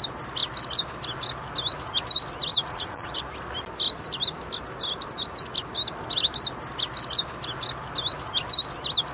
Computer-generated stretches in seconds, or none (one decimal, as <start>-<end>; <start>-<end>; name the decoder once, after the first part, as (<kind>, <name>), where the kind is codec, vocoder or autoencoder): 2.5-3.2 (vocoder, Vocos)